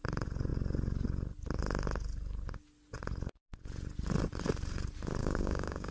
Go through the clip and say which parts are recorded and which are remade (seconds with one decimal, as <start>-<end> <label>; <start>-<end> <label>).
0.0-5.2 recorded; 5.2-5.9 remade